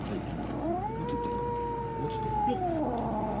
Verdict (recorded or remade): recorded